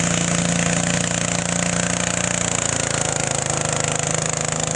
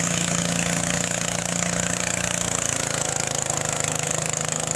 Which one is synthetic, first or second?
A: second